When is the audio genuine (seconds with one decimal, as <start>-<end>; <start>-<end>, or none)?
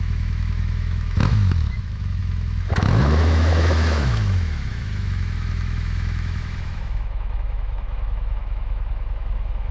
none